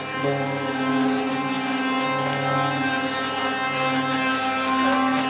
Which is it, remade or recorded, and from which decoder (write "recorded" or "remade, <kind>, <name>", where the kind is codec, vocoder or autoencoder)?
recorded